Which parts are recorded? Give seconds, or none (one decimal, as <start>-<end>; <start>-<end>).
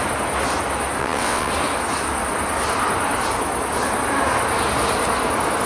0.0-1.0; 1.5-5.7